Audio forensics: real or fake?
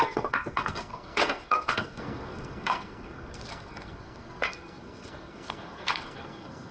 fake